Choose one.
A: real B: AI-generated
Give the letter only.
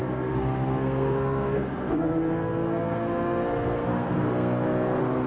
B